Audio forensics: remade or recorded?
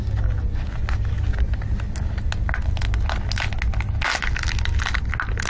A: recorded